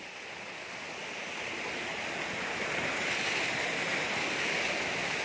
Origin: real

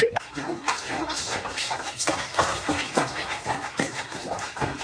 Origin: fake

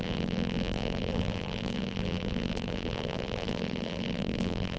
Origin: fake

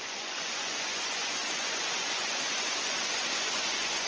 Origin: fake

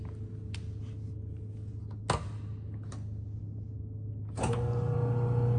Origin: real